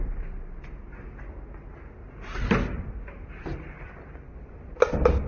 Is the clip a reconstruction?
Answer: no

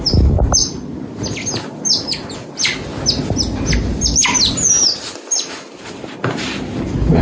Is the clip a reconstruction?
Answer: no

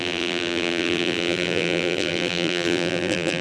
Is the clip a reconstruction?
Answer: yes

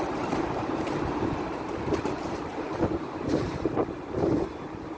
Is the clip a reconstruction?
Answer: yes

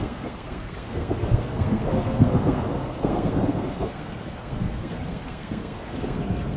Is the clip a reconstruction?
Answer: yes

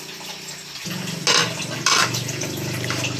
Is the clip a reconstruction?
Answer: no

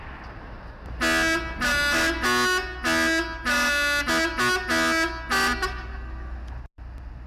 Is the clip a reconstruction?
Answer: no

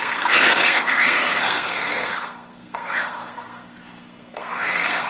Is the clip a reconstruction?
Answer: yes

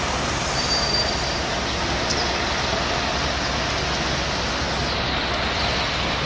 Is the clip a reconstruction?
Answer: no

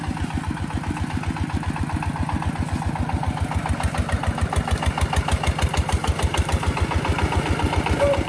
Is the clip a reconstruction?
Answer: no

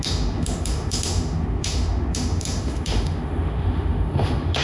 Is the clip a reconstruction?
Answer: yes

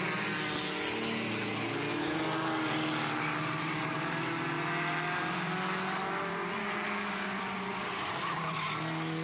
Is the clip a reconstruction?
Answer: no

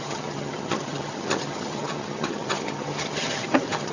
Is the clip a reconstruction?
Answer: yes